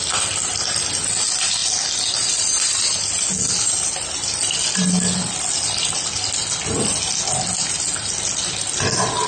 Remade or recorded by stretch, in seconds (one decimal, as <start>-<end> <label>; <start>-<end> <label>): 0.0-9.3 recorded